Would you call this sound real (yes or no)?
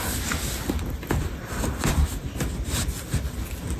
yes